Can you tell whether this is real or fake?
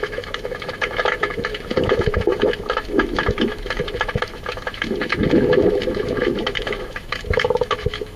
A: fake